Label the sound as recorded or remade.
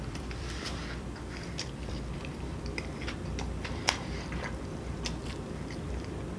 remade